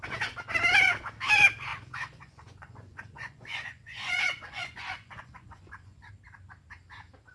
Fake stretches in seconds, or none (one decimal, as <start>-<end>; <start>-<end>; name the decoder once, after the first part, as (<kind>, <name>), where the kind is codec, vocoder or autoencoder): 1.7-6.1 (vocoder, Vocos)